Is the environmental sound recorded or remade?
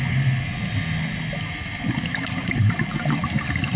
recorded